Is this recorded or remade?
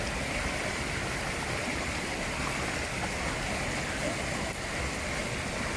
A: recorded